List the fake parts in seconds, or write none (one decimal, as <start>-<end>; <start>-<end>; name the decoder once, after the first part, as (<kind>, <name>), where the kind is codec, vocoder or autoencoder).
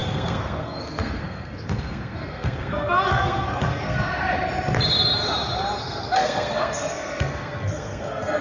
0.0-4.1 (codec, SNAC); 5.8-8.4